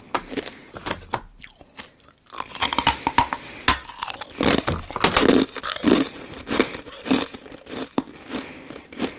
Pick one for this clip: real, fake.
real